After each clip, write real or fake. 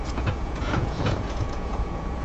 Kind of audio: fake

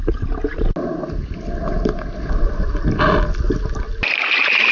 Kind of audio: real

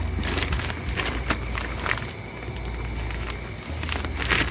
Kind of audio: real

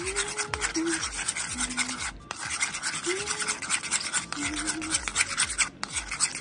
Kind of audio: real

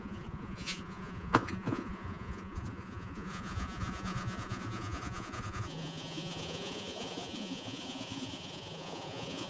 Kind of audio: fake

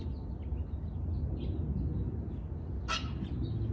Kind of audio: real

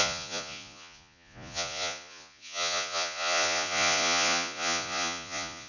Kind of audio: fake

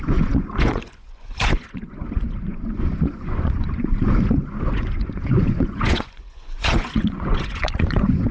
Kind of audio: fake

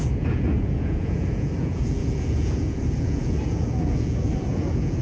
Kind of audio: fake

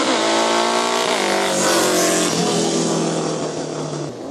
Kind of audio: real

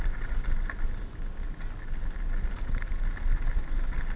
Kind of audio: real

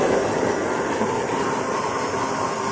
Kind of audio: real